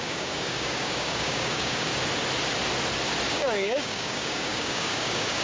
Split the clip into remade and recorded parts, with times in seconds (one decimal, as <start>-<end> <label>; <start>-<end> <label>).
0.0-1.9 remade; 1.9-3.3 recorded; 3.3-5.4 remade